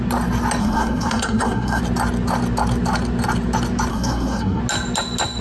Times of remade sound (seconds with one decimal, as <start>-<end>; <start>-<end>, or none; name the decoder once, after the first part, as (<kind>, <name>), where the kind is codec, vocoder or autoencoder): 0.6-1.8 (codec, SNAC); 3.9-4.6